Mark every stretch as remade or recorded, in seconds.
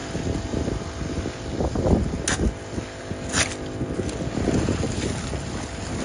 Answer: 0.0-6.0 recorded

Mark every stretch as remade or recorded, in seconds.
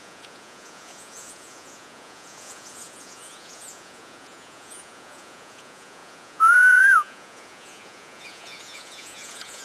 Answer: 0.0-9.6 remade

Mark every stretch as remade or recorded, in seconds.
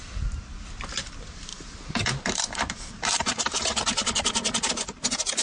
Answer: 0.0-1.5 recorded; 1.5-4.7 remade; 4.7-5.4 recorded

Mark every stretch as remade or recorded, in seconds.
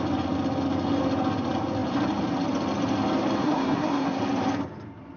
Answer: 0.0-3.4 recorded; 3.4-4.2 remade; 4.2-5.2 recorded